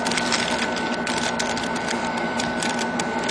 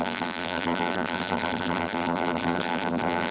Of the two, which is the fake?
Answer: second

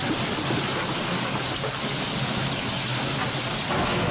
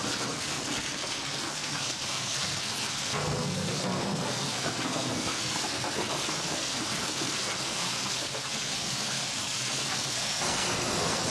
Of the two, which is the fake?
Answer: second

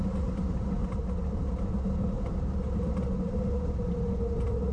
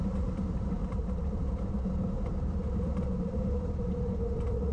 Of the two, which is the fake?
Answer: second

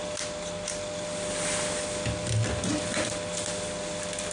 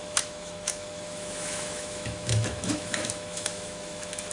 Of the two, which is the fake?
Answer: second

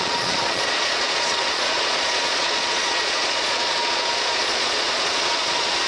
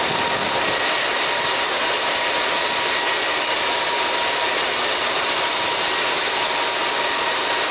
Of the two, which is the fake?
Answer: first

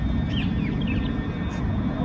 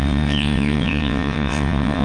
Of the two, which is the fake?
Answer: second